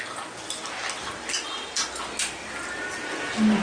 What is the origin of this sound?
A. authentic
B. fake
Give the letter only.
A